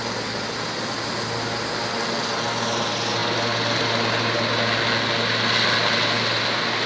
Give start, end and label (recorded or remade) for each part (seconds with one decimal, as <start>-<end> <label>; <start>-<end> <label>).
0.0-6.9 recorded